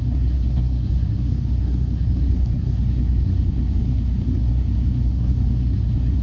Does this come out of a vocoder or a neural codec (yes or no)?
yes